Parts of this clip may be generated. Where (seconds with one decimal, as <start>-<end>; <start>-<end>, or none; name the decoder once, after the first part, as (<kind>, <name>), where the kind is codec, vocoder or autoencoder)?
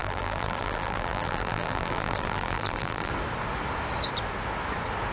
0.0-3.1 (vocoder, BigVGAN v2)